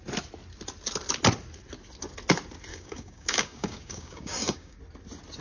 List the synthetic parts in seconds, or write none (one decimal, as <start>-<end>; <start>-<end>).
2.7-4.8